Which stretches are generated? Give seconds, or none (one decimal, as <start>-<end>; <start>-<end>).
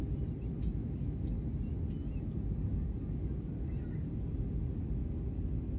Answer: 0.8-1.4